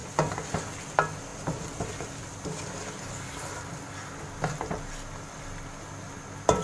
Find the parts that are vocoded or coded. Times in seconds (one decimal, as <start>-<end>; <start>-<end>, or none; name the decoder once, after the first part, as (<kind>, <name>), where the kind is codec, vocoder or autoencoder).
none